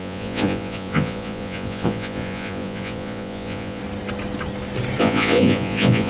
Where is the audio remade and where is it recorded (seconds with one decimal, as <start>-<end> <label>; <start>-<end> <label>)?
0.0-3.8 remade; 3.8-5.0 recorded; 5.0-6.1 remade